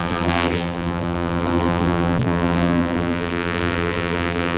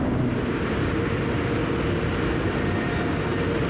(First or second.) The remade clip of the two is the first